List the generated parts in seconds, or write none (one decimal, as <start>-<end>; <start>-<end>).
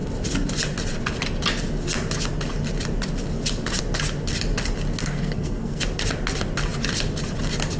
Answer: 5.0-5.8